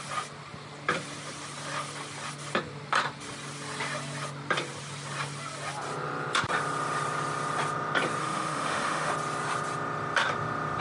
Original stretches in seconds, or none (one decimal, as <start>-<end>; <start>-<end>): 0.0-8.2; 9.1-10.8

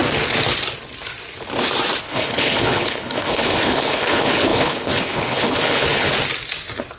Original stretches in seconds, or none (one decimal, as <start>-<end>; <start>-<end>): 0.0-2.0; 6.1-7.0

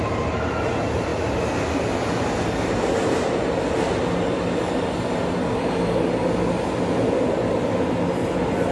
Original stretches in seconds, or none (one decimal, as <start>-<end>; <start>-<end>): 0.0-8.7